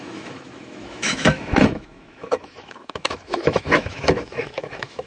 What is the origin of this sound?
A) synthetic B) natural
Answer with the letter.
A